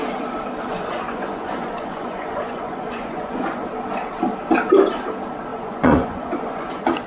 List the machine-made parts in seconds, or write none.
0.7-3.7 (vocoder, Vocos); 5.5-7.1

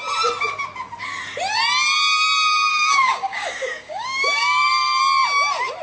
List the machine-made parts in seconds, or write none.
2.7-5.0 (codec, DAC)

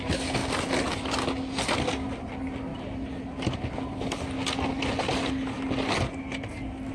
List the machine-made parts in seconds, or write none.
none

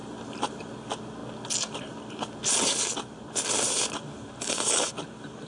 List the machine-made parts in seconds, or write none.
0.0-0.6 (vocoder, BigVGAN v2)

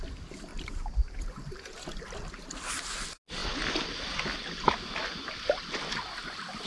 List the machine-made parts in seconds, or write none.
0.5-1.2 (vocoder, BigVGAN v2)

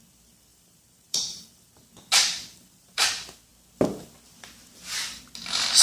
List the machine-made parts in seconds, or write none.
0.5-1.7 (vocoder, BigVGAN v2); 2.5-3.1

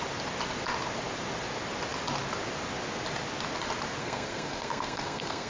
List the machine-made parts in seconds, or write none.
4.0-5.5 (codec, SNAC)

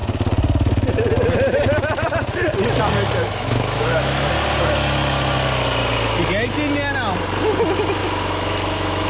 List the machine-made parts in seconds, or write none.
3.2-4.3 (autoencoder, DAC-VAE); 8.0-9.1